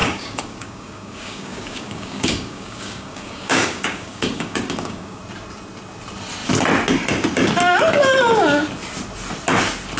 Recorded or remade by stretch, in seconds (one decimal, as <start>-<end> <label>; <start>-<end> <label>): 0.0-5.2 remade; 5.2-10.0 recorded